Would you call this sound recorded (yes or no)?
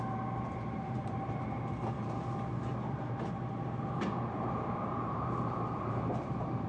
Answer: no